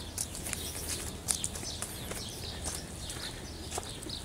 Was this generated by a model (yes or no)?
no